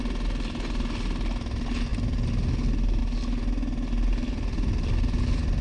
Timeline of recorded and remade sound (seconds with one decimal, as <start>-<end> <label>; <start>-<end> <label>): 0.0-5.6 recorded